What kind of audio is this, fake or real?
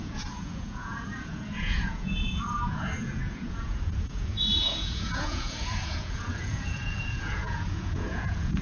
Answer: fake